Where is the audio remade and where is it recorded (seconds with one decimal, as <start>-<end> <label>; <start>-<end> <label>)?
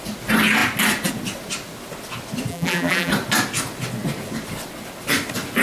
0.0-2.5 recorded; 2.5-3.1 remade; 3.1-5.6 recorded